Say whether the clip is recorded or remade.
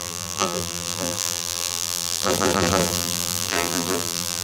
remade